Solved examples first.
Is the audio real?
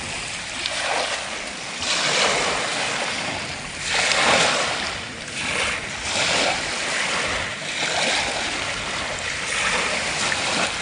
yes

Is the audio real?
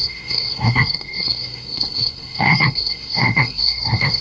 no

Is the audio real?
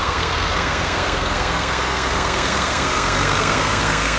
no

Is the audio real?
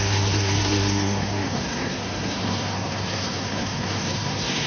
no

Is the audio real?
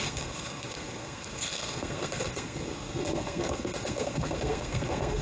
no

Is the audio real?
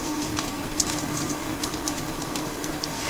no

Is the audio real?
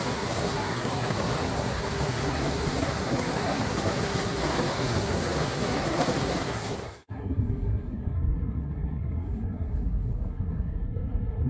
no